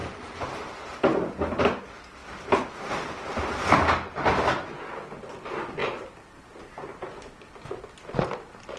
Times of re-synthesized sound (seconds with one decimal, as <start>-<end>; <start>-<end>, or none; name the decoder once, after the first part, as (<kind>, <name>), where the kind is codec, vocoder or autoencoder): 0.0-1.0 (vocoder, BigVGAN v2); 5.8-6.4